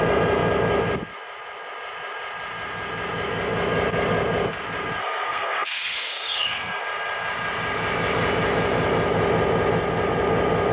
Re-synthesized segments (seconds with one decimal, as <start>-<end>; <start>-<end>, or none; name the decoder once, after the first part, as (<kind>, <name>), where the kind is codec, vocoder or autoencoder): 5.0-6.8 (codec, SNAC)